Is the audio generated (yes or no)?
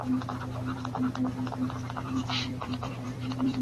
yes